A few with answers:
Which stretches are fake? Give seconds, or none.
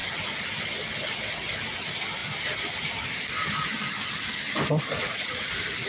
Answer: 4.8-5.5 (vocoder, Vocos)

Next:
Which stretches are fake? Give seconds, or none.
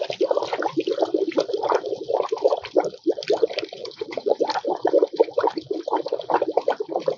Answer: 3.8-4.4 (vocoder, Vocos)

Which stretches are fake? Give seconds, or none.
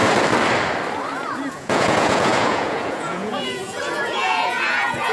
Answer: 1.5-5.1 (vocoder, Vocos)